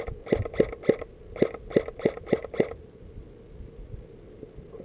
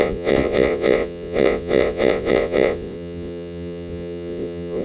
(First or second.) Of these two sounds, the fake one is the second